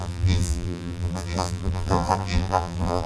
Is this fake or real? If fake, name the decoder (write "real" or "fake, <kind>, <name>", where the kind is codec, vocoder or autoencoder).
fake, vocoder, BigVGAN v2